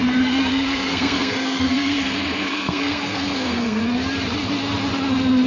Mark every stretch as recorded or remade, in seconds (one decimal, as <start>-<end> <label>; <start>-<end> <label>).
0.0-0.5 recorded; 0.5-3.8 remade; 3.8-5.5 recorded